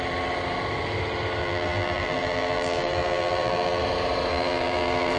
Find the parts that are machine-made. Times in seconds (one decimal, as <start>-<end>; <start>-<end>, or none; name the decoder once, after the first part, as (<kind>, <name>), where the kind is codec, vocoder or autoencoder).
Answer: 1.4-3.8 (vocoder, BigVGAN v2); 4.3-5.2